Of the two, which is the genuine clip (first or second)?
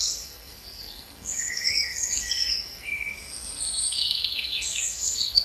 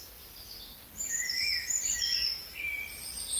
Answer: second